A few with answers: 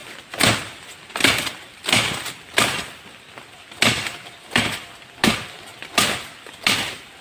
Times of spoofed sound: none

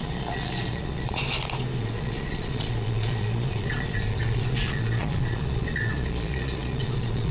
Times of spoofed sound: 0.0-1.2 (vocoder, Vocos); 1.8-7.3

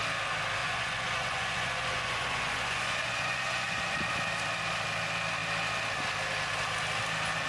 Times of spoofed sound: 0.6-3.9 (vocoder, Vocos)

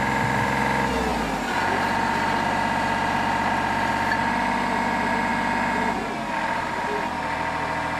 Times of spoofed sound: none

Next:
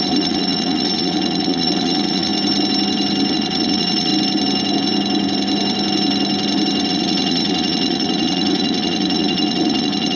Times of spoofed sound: 0.0-2.3 (vocoder, Vocos); 3.3-4.1; 6.9-10.2

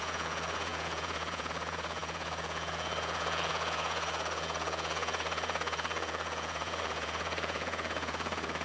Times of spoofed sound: 0.0-8.6 (vocoder, Vocos)

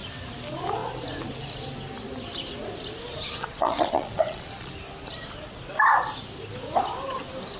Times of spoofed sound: 3.4-4.7 (vocoder, Vocos)